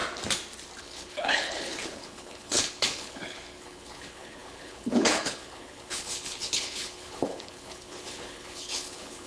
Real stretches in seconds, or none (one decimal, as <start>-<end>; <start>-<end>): 0.0-0.8